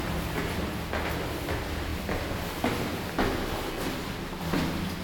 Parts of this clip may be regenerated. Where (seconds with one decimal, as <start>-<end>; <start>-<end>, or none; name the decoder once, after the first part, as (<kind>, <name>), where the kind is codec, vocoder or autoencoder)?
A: none